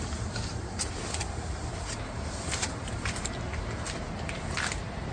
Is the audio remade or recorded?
recorded